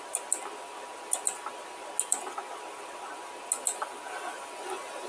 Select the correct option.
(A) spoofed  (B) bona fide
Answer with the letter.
B